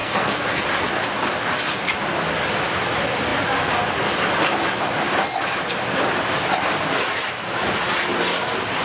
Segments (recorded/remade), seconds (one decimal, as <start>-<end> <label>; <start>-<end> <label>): 0.0-0.6 remade; 0.6-8.8 recorded